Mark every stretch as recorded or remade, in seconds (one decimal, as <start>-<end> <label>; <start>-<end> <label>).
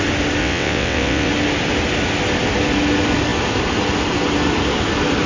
0.0-0.4 recorded; 0.4-1.3 remade; 1.3-5.3 recorded